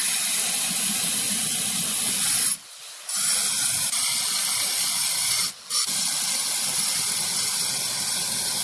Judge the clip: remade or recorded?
recorded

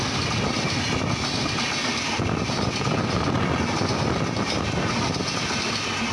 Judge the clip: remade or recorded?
recorded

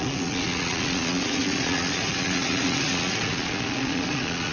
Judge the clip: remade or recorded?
remade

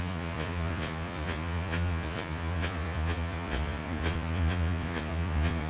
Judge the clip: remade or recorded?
remade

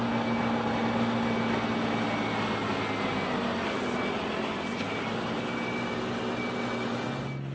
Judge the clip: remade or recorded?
recorded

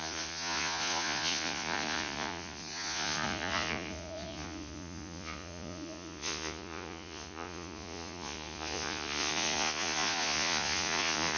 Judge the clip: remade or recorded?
remade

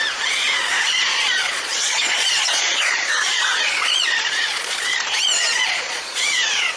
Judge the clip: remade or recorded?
remade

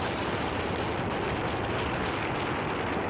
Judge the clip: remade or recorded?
recorded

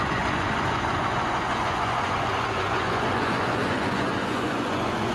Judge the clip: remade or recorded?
remade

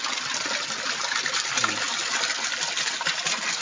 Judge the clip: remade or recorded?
recorded